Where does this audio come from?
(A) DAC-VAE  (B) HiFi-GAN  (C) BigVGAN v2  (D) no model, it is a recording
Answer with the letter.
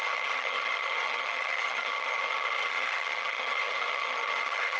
B